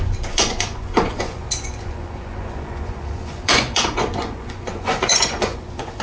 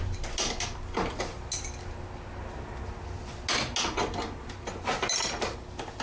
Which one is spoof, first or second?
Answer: first